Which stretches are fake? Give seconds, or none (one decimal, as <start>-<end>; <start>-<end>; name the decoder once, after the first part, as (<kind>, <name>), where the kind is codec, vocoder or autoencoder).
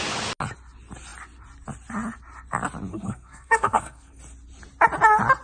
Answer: 2.9-4.2 (codec, SNAC)